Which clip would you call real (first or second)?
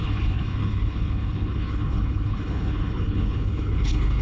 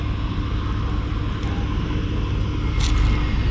second